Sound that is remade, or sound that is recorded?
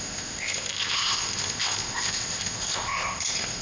remade